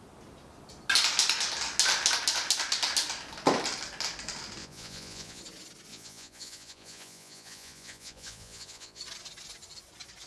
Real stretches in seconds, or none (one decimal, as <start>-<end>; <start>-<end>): 0.0-4.6; 5.4-5.9; 9.0-10.3